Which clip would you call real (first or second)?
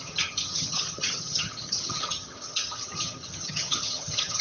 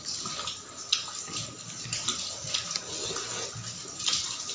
second